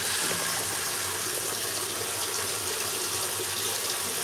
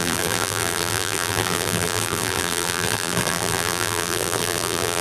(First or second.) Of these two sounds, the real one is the first